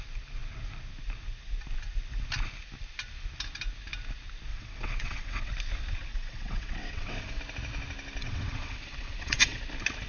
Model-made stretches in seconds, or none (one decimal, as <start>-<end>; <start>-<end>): 4.5-5.5; 6.1-7.4; 8.2-9.6